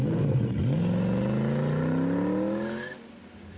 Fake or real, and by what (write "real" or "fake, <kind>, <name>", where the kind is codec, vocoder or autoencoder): real